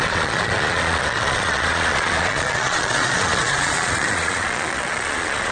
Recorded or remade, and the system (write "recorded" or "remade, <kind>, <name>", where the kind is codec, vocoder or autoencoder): remade, vocoder, Vocos